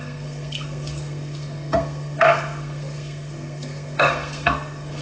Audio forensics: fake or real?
fake